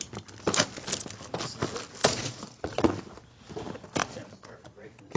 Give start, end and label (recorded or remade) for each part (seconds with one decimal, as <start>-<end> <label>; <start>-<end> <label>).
0.0-2.0 recorded; 2.0-3.0 remade; 3.0-4.0 recorded; 4.0-5.2 remade